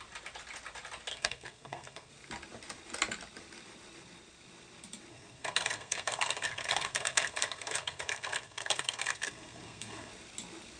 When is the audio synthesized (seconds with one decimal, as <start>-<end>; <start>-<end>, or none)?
1.1-2.1; 5.1-10.1

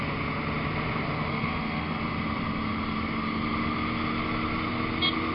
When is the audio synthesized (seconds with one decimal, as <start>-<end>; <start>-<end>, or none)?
1.3-2.0

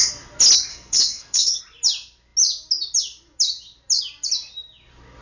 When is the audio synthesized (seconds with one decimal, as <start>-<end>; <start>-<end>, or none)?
0.7-1.6

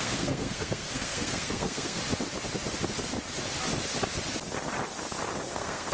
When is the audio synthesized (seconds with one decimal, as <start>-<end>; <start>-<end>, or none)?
0.0-2.0; 5.5-5.9

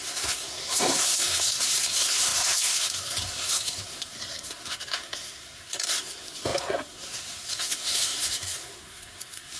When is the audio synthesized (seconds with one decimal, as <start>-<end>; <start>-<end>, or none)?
0.0-9.6

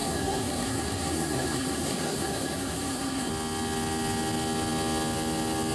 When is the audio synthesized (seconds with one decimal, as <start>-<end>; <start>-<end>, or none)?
0.0-3.3

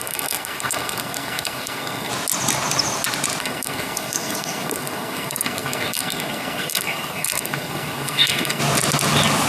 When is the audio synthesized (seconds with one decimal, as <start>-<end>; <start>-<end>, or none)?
0.0-2.1; 3.4-8.6